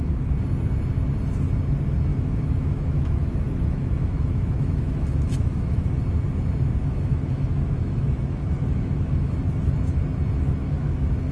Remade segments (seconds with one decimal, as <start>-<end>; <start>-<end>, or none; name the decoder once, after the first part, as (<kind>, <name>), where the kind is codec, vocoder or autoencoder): 2.1-6.0 (autoencoder, DAC-VAE); 6.8-9.4; 10.6-11.3